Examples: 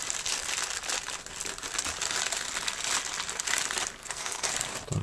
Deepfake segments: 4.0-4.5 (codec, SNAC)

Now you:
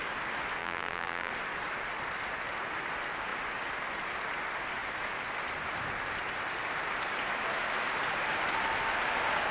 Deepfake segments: 0.6-1.3 (vocoder, BigVGAN v2)